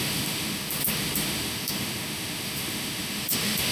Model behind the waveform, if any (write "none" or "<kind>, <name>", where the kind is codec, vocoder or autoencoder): autoencoder, DAC-VAE